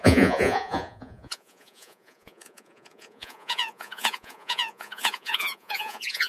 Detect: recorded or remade remade